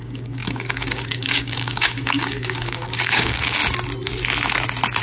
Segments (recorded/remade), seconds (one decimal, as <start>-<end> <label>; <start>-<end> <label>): 0.0-3.6 remade; 3.6-5.0 recorded